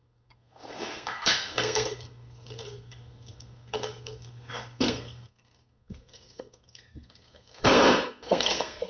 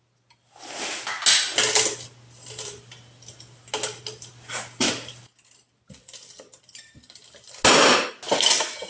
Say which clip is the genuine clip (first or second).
second